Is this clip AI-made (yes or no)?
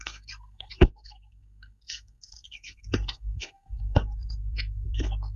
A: yes